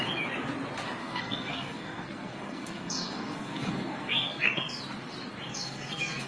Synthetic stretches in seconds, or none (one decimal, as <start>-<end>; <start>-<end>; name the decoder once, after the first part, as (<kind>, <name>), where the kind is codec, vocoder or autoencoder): 1.0-4.8 (codec, SNAC); 5.5-6.3

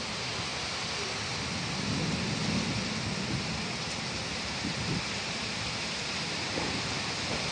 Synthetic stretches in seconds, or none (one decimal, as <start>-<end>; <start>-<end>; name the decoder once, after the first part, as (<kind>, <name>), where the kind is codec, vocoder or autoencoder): 0.0-7.5 (vocoder, BigVGAN v2)

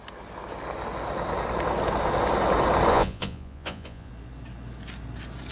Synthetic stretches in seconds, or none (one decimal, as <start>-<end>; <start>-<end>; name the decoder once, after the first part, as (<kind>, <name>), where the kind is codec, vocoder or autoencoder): 2.9-4.1 (vocoder, Vocos)

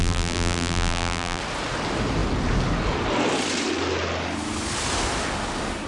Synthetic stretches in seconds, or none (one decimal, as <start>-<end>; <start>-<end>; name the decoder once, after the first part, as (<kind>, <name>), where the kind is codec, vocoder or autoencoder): 0.0-1.4 (vocoder, BigVGAN v2)

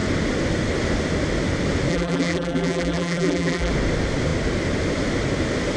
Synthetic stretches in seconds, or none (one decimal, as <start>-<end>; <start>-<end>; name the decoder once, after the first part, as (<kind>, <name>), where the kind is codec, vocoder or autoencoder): 1.9-3.7 (vocoder, BigVGAN v2)